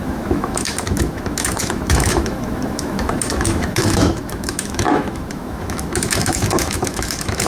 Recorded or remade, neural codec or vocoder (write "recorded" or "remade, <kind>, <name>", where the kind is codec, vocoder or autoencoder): remade, autoencoder, DAC-VAE